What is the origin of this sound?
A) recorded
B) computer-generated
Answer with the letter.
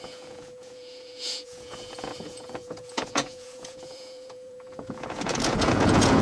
B